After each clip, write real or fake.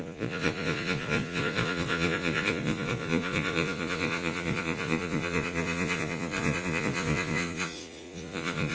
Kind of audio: fake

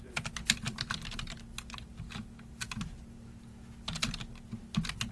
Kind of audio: real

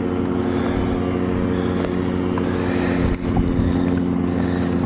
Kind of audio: real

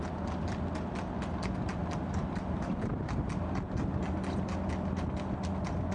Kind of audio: real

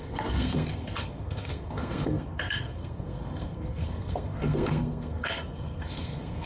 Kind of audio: fake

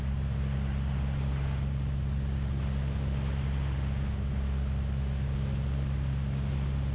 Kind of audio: real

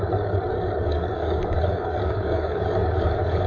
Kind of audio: fake